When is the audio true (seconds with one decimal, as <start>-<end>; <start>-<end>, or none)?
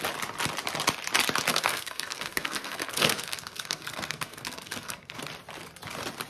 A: 0.0-1.5; 5.2-6.3